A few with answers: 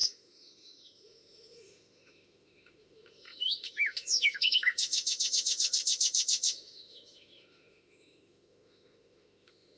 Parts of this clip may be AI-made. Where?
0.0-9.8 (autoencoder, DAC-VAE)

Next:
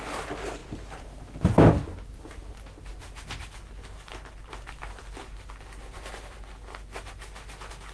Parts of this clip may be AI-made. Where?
none

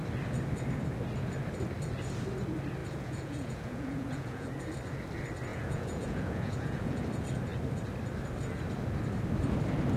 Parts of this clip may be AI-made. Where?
2.8-4.6 (vocoder, Vocos); 5.5-7.0

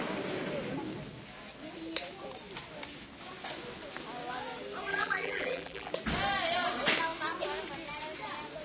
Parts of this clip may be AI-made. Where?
4.9-5.9 (vocoder, BigVGAN v2)